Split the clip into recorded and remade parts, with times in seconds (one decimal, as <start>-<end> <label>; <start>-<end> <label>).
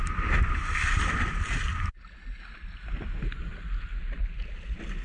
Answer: 0.0-5.0 recorded